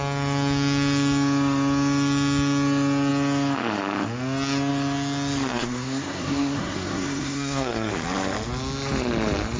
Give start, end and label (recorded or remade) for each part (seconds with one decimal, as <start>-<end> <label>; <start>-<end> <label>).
0.0-5.5 recorded; 5.5-7.9 remade; 7.9-9.6 recorded